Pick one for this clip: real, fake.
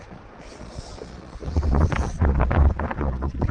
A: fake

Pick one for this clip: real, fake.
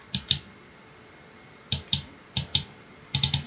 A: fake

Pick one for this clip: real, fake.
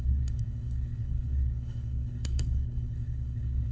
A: fake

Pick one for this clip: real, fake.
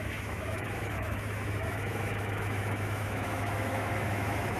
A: fake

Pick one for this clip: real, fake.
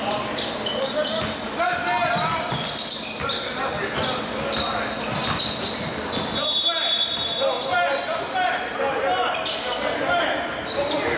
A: real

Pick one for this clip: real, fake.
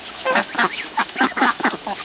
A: fake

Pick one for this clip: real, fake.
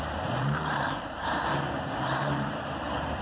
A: fake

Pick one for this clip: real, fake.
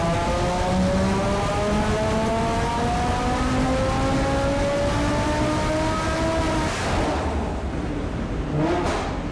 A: real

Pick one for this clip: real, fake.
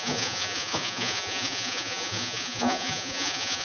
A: fake